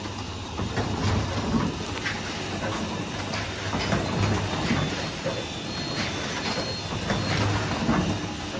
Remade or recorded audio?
recorded